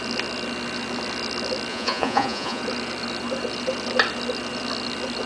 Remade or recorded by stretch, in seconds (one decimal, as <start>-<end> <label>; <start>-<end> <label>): 0.0-1.7 recorded; 1.7-2.6 remade; 2.6-5.3 recorded